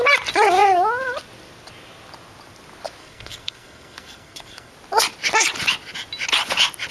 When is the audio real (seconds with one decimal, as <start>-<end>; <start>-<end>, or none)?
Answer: 0.0-3.0; 4.7-6.9